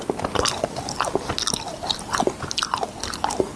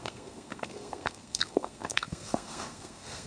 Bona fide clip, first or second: first